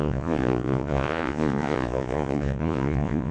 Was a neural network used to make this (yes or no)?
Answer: yes